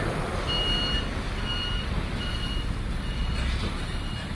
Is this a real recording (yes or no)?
yes